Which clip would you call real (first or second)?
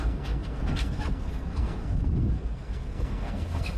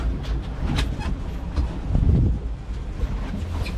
second